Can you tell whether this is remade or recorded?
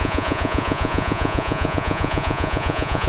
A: remade